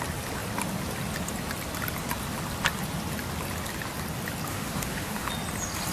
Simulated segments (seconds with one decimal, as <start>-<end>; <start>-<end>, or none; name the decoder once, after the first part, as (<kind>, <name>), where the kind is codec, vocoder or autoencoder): 4.5-5.3 (autoencoder, DAC-VAE)